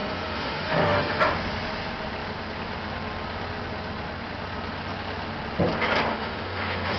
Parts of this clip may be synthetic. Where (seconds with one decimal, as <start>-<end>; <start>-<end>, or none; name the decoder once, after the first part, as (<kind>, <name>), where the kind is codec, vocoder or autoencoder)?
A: 0.0-1.2 (autoencoder, DAC-VAE); 6.1-7.0